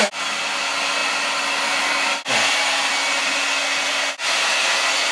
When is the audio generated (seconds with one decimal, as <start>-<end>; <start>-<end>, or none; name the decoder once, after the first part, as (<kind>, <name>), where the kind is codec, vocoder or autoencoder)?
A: none

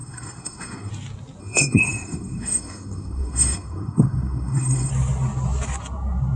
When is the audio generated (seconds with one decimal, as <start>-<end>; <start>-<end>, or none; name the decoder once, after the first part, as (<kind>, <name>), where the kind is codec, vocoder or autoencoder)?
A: 0.0-0.9 (codec, SNAC); 1.4-4.9

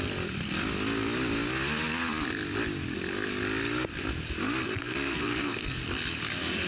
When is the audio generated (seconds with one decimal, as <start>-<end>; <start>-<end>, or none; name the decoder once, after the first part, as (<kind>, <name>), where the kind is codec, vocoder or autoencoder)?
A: 4.6-5.8 (codec, SNAC)

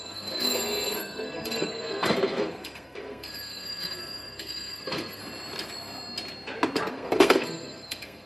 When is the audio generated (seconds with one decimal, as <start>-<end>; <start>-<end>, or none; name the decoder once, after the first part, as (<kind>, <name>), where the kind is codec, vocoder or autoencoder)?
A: 0.0-5.2 (codec, SNAC); 6.9-8.3

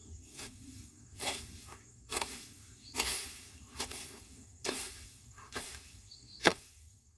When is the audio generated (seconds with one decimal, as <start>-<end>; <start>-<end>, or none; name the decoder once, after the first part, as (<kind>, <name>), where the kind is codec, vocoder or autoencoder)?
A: 0.0-7.2 (codec, SNAC)

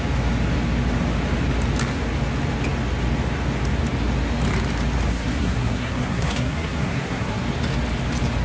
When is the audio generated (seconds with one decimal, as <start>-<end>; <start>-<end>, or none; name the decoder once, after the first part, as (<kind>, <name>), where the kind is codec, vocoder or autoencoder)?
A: 5.1-7.4 (codec, SNAC)

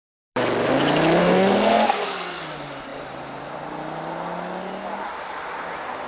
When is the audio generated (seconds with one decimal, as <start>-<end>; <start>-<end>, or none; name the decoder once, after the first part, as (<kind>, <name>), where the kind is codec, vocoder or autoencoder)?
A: 1.2-2.4 (codec, SNAC)